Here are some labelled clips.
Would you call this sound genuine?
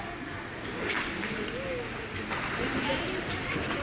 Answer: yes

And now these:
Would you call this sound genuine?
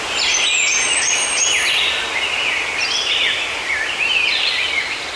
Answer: yes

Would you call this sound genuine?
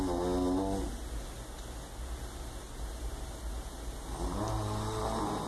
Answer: yes